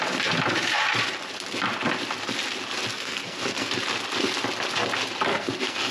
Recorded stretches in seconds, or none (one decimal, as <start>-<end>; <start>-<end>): 0.0-2.9; 3.7-5.3